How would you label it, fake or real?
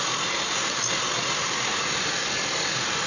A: real